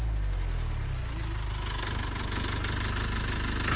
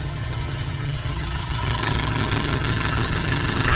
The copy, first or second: second